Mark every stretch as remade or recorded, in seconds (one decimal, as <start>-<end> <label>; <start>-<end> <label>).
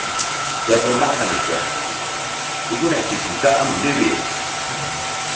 0.0-1.6 remade; 1.6-2.9 recorded; 2.9-3.3 remade; 3.3-5.4 recorded